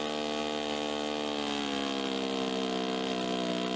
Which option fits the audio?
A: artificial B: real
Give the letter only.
B